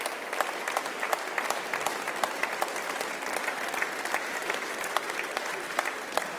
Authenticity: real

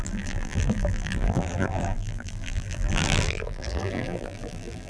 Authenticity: fake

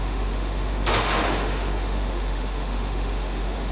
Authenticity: fake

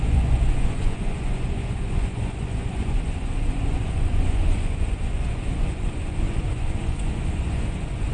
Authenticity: fake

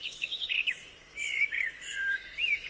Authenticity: fake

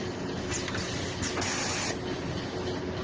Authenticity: real